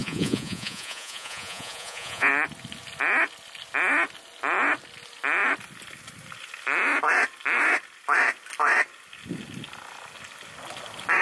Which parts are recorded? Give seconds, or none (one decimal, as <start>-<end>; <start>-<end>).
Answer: 2.3-11.2